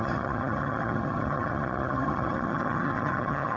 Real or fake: fake